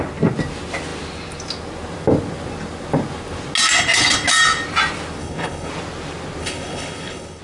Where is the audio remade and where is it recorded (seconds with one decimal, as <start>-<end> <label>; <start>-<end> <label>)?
0.0-5.2 recorded; 5.2-5.7 remade; 5.7-6.4 recorded; 6.4-7.4 remade